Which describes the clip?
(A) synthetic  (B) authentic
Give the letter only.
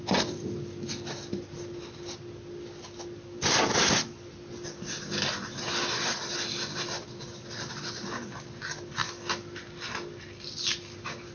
B